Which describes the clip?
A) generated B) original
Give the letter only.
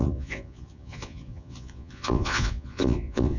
A